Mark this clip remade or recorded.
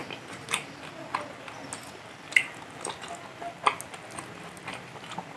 recorded